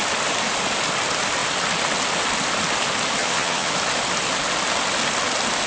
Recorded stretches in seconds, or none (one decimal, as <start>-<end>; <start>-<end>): 0.0-3.2; 3.7-5.7